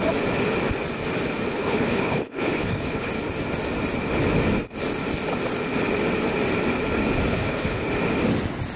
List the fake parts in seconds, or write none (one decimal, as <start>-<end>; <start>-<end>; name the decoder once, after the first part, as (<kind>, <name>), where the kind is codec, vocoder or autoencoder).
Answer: 1.5-3.1 (codec, HILCodec); 7.3-7.8